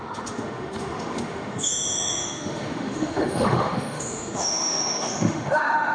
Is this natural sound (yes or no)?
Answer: no